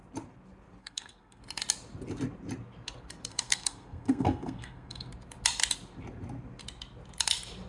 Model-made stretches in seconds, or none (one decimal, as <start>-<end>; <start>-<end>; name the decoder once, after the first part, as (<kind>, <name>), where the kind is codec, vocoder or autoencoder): 0.8-1.4 (codec, SNAC); 3.3-5.1